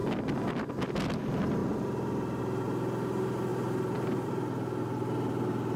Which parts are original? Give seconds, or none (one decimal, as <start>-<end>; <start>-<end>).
0.0-5.8